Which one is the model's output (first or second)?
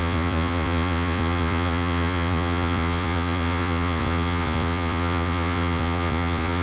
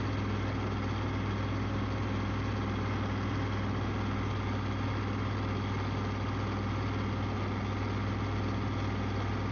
first